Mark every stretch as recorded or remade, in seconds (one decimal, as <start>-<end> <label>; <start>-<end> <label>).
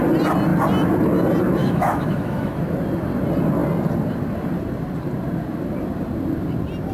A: 0.0-1.6 recorded; 1.6-2.6 remade; 2.6-6.9 recorded